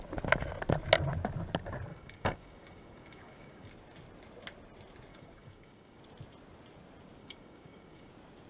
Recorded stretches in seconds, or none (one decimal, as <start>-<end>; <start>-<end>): 0.0-1.9; 3.7-5.1; 6.0-7.2; 8.1-8.5